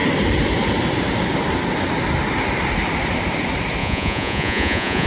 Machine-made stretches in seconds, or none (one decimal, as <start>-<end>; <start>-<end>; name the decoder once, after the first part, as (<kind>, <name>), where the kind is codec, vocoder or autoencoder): 3.8-5.1 (vocoder, Vocos)